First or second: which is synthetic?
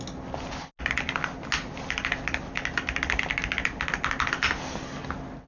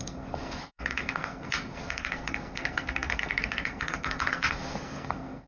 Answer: second